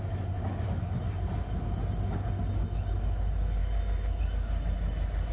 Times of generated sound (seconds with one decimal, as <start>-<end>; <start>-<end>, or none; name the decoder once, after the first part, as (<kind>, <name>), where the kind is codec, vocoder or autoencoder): none